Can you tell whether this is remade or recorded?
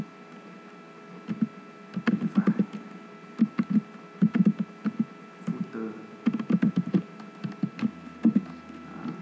recorded